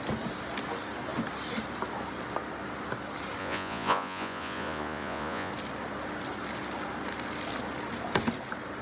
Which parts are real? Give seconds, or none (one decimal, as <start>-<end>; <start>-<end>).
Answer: 0.0-3.4; 5.5-8.8